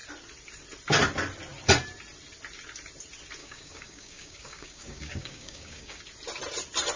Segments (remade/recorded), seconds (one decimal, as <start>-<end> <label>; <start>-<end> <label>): 0.0-3.4 recorded; 3.4-6.0 remade; 6.0-7.0 recorded